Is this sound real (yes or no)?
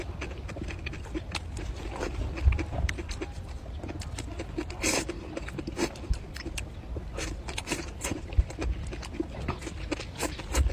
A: yes